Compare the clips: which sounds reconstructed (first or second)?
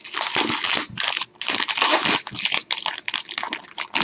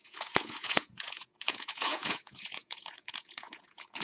second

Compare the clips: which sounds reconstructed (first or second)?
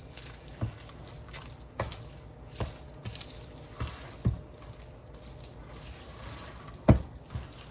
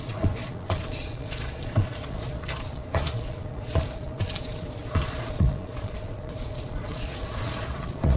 second